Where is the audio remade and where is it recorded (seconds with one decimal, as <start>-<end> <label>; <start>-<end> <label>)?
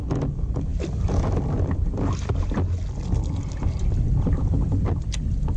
0.0-5.6 recorded